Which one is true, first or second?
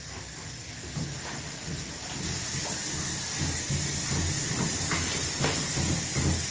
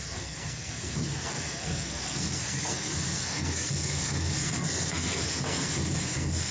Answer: first